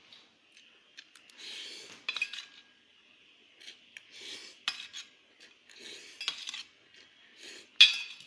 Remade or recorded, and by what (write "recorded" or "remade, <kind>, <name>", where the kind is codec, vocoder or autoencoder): recorded